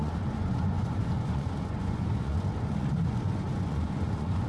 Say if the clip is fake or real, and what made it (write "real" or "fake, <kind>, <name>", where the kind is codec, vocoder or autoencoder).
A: fake, vocoder, Vocos